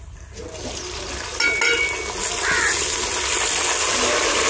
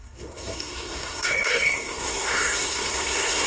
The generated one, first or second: second